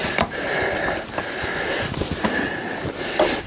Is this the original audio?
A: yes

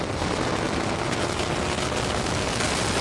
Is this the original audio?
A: yes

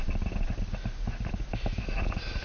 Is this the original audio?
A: yes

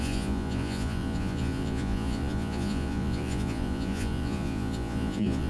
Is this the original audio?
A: no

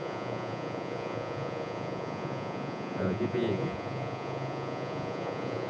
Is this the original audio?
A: no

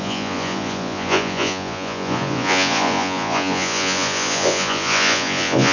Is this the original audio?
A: no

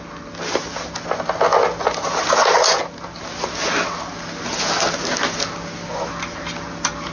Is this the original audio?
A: yes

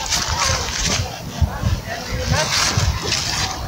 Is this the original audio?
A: yes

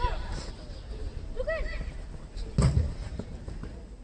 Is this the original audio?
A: yes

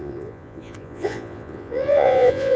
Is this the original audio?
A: no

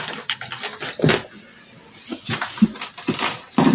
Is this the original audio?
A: yes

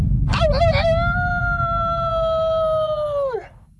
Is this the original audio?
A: yes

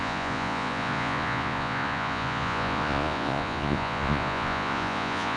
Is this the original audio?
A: no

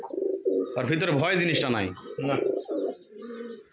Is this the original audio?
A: yes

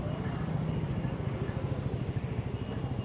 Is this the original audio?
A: yes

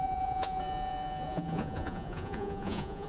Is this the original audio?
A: no